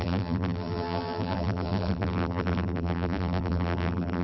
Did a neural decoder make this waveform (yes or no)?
yes